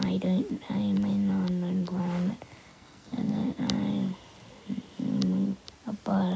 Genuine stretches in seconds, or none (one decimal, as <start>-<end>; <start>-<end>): 0.0-2.7; 3.6-6.4